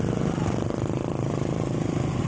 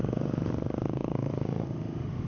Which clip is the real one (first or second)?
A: first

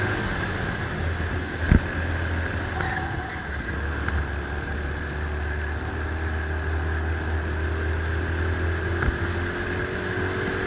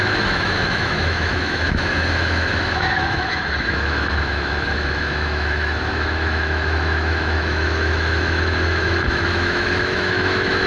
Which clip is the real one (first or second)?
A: first